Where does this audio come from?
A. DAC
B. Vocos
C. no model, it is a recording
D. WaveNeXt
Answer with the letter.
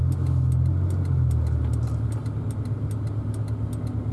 C